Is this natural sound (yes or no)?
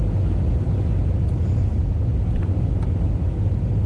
yes